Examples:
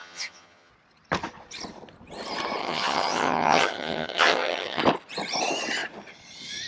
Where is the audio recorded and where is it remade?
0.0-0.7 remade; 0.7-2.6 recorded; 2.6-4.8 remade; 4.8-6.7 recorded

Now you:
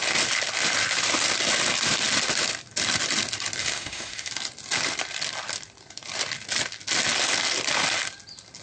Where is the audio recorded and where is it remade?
0.0-3.6 recorded; 3.6-4.3 remade; 4.3-8.6 recorded

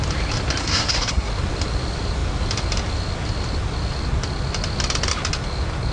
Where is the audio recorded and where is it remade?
0.0-0.6 recorded; 0.6-1.3 remade; 1.3-5.9 recorded

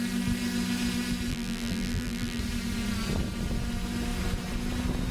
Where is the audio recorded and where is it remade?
0.0-1.3 recorded; 1.3-2.4 remade; 2.4-5.1 recorded

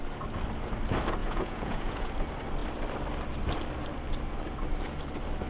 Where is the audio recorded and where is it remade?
0.0-1.2 recorded; 1.2-2.1 remade; 2.1-5.5 recorded